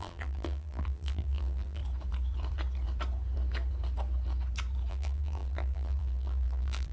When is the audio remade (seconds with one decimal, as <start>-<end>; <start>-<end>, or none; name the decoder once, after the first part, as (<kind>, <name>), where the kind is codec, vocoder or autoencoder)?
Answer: 0.0-1.8 (vocoder, BigVGAN v2); 4.9-6.9